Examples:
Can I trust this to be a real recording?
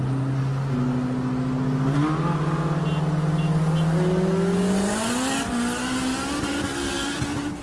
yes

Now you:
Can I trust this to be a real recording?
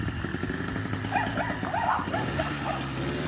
yes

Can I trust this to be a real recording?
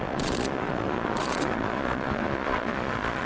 no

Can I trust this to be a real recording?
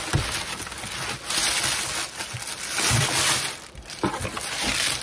yes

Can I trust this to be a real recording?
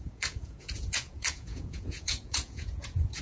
no